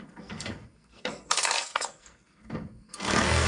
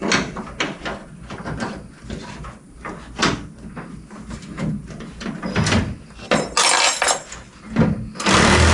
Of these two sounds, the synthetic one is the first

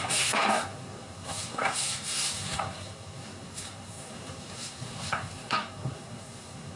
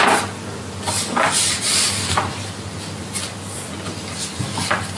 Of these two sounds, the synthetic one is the first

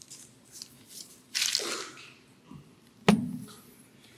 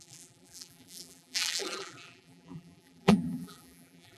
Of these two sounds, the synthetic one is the second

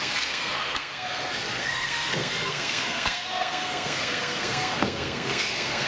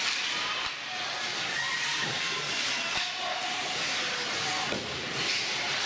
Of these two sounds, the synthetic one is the first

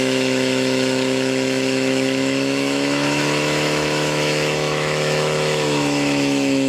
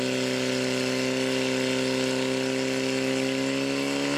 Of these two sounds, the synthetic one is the first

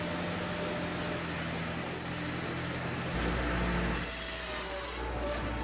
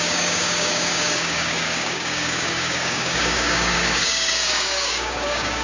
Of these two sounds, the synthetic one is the second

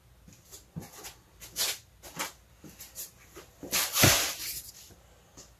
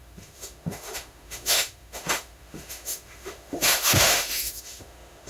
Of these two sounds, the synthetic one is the second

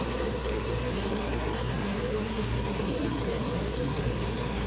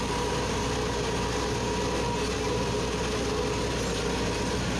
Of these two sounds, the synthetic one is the first